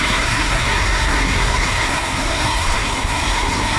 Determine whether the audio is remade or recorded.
remade